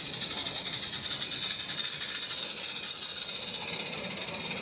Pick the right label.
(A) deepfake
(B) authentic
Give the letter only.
B